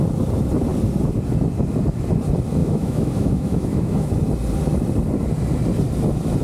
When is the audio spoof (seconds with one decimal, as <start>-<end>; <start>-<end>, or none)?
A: 2.6-4.2